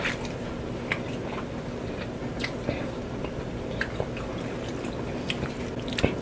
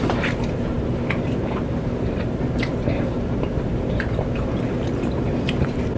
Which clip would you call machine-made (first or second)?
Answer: second